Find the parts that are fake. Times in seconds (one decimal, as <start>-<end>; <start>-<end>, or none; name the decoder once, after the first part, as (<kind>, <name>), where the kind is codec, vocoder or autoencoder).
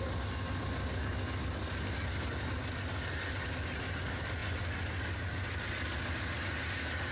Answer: none